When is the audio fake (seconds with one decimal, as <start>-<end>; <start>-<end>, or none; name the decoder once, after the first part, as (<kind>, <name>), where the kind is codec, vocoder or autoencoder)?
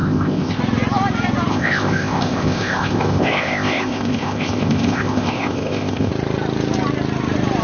0.0-0.6 (codec, ZipCodec); 1.5-6.1